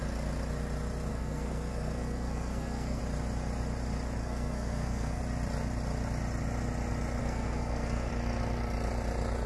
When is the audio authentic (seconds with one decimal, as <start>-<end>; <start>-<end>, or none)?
0.0-1.1; 3.0-4.2; 5.2-7.2; 8.1-9.5

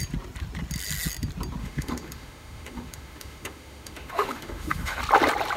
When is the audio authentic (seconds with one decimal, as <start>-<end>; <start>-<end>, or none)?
0.0-1.6; 5.0-5.6

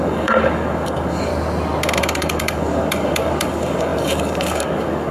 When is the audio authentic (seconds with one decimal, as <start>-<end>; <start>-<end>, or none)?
1.3-2.0